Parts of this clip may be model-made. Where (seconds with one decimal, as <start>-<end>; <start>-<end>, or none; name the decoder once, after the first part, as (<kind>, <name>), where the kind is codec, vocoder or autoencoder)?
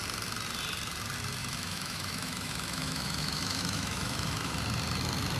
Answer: 1.4-4.6 (autoencoder, DAC-VAE)